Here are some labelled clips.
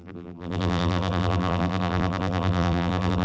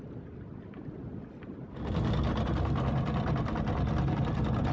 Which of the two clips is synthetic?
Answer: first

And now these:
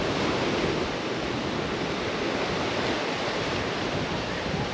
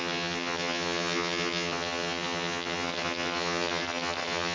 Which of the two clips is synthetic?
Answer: second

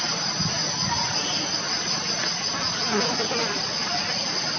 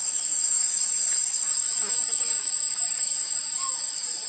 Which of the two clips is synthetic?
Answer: second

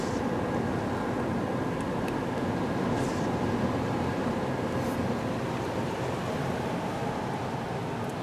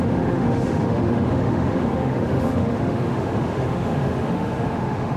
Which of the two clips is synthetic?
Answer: second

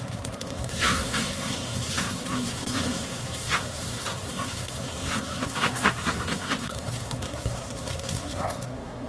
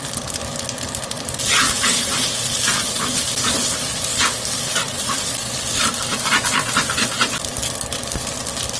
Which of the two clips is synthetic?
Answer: first